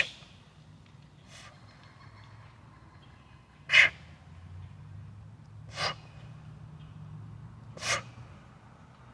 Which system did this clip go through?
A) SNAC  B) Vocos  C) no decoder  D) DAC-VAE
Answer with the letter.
C